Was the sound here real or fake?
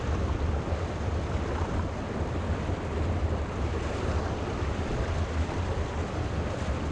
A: real